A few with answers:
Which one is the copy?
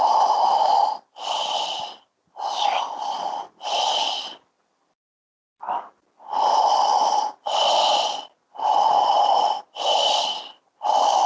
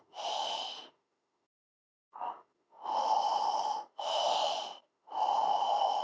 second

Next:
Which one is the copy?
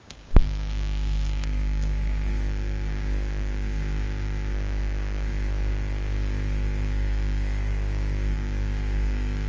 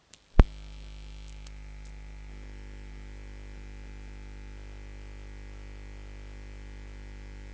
first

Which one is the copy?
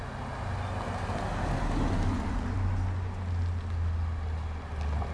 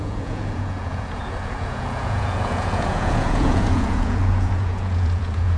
second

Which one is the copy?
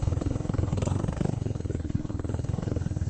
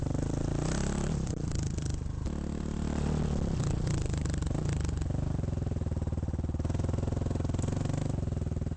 first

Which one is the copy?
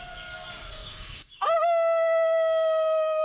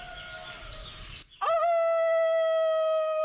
first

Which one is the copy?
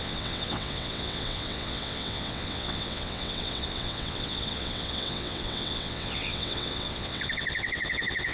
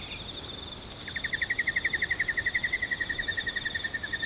first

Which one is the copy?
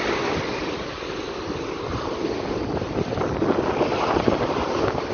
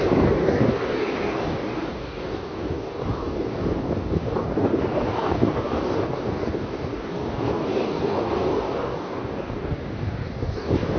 second